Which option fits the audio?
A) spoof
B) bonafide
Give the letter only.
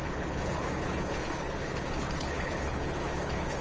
A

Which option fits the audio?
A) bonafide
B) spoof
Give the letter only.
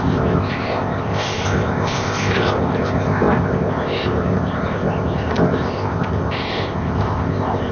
B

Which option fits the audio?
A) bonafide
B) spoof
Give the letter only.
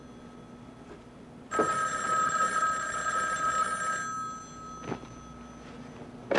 A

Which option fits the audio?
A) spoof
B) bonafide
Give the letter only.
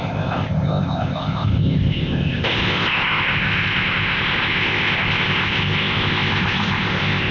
A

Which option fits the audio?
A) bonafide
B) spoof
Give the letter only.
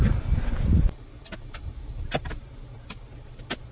A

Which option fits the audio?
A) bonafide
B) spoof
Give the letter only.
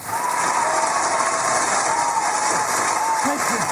A